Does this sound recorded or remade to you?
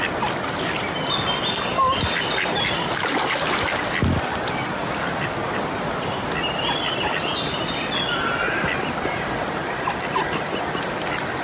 recorded